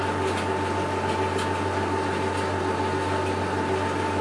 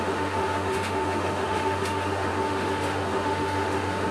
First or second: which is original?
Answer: first